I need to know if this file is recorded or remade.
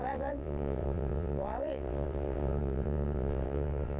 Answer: remade